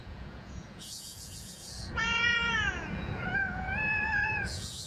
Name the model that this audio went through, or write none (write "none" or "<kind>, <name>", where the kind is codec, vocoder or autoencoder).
vocoder, Vocos